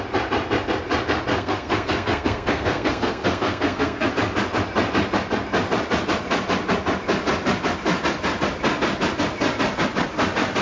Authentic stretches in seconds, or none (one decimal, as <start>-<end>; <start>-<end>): 0.0-1.3; 4.1-10.6